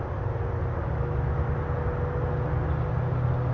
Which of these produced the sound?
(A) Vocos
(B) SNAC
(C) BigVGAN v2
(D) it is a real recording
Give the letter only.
D